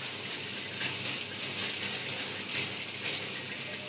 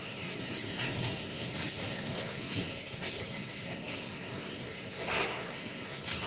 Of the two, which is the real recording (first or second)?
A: first